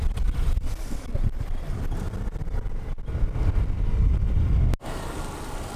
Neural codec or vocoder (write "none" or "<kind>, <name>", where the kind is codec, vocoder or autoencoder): none